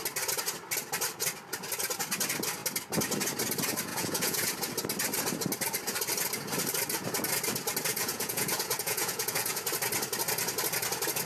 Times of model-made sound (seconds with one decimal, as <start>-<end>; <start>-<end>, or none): 3.9-4.5; 7.9-9.6